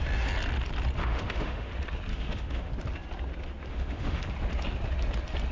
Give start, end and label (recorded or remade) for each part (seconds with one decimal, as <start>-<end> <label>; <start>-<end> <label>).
0.0-1.0 recorded; 1.0-1.7 remade; 1.7-2.1 recorded; 2.1-2.7 remade; 2.7-3.7 recorded; 3.7-4.2 remade; 4.2-5.5 recorded